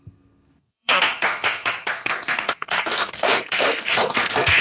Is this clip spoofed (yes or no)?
yes